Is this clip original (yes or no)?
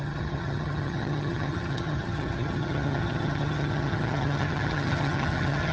no